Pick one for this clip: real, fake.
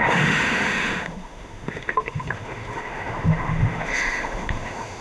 fake